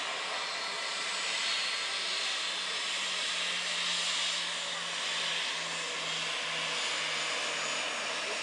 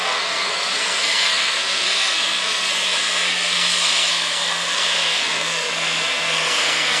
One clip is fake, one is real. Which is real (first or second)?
first